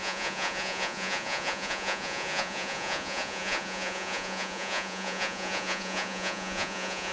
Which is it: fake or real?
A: fake